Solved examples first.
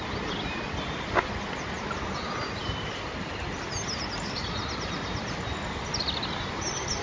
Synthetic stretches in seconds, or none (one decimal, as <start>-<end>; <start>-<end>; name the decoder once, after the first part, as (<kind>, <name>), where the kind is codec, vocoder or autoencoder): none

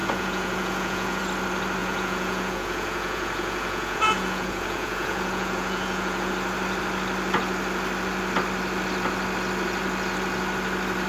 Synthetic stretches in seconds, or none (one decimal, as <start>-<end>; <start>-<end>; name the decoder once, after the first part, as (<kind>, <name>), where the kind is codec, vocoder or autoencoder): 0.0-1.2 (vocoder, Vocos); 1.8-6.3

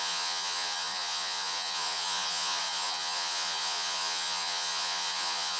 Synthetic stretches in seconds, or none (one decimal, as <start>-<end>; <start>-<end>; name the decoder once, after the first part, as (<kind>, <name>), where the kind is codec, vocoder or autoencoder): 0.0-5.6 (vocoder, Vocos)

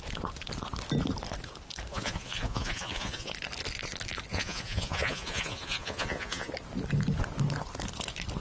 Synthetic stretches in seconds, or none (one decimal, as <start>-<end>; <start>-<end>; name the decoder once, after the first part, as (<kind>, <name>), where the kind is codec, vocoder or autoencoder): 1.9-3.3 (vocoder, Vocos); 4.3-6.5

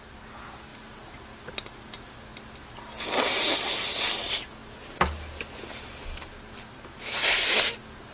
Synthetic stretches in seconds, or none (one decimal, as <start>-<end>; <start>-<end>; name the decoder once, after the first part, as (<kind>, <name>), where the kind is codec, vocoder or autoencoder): none